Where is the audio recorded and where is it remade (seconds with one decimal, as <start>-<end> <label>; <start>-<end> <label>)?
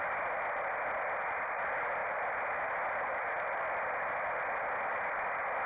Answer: 0.0-5.7 recorded